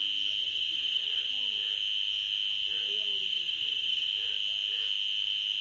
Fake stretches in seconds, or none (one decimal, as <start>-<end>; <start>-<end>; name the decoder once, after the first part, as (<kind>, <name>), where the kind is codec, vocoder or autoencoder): 0.4-1.3 (vocoder, HiFi-GAN); 3.3-4.1